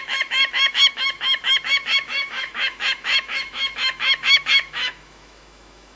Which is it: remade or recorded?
remade